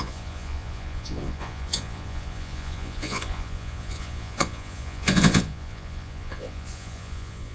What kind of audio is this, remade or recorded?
remade